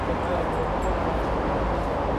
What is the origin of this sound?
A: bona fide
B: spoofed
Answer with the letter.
A